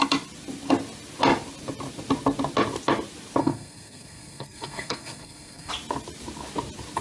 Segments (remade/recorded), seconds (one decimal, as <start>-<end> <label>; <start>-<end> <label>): 0.0-3.4 recorded; 3.4-5.7 remade; 5.7-7.0 recorded

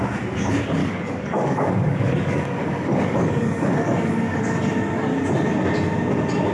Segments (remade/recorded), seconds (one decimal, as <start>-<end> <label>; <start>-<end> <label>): 0.0-0.8 recorded; 0.8-4.7 remade; 4.7-6.5 recorded

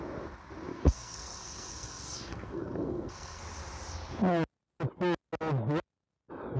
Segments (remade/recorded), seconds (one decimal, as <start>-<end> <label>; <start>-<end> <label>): 0.0-0.7 recorded; 0.7-3.4 remade; 3.4-6.6 recorded